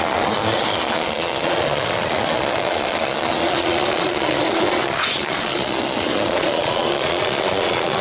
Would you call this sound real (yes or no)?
no